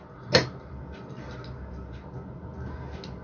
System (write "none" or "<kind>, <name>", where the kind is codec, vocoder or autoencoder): none